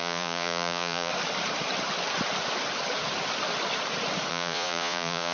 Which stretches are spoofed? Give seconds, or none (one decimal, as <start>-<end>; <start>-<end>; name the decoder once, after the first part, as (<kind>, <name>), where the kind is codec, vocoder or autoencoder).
0.0-1.1 (vocoder, Vocos); 4.3-5.3